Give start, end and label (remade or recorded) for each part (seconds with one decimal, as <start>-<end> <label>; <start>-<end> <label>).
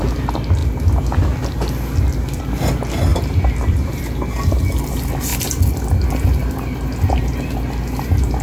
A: 0.0-3.1 recorded; 3.1-4.0 remade; 4.0-8.4 recorded